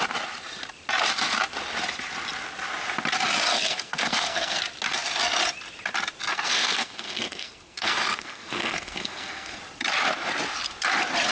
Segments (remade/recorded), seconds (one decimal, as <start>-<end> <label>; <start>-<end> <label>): 0.0-3.5 recorded; 3.5-4.6 remade; 4.6-6.3 recorded; 6.3-9.6 remade; 9.6-11.3 recorded